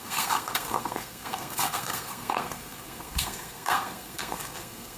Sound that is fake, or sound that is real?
fake